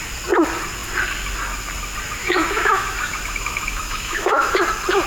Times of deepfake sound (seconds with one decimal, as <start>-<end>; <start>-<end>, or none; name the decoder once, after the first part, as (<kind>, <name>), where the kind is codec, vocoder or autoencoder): 2.2-4.6 (autoencoder, DAC-VAE)